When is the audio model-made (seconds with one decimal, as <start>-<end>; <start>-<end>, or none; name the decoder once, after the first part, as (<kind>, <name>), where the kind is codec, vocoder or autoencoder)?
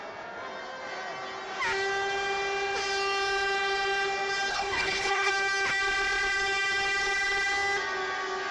4.5-5.3 (codec, HILCodec)